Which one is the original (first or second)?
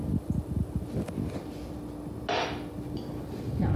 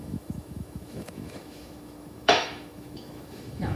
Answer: first